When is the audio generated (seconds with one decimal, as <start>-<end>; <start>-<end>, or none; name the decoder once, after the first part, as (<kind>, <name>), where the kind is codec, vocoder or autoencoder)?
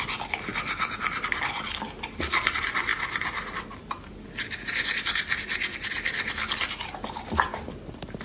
none